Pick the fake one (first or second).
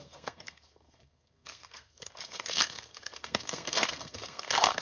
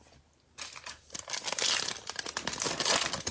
first